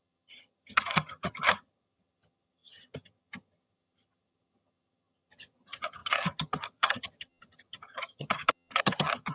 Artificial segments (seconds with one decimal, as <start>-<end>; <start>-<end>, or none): 0.0-9.3